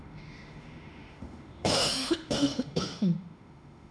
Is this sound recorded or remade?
remade